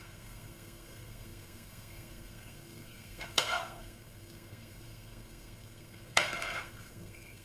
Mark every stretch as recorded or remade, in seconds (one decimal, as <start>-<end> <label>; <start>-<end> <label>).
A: 0.0-7.4 remade